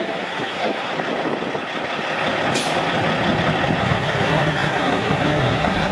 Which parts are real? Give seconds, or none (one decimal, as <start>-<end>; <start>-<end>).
0.9-3.8